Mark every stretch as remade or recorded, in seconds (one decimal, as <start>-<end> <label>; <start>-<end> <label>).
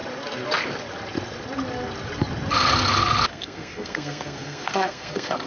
0.0-3.3 recorded; 3.3-5.5 remade